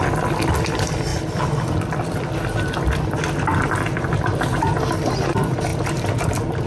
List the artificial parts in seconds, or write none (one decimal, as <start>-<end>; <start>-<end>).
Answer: 1.1-5.1; 5.7-6.3